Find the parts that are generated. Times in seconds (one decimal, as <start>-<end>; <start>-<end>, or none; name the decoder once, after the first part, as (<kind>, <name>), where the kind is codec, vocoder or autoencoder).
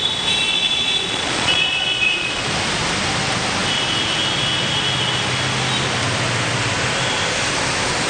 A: 0.5-2.4 (vocoder, Vocos)